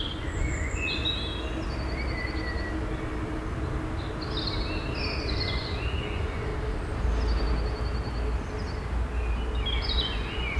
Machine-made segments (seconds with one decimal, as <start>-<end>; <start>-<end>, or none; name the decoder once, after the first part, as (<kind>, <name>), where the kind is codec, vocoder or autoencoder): 0.0-1.0 (vocoder, Vocos); 5.2-6.5; 9.8-10.6